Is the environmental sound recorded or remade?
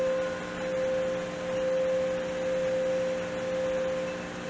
recorded